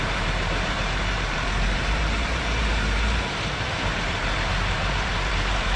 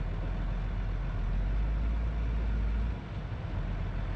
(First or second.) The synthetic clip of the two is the first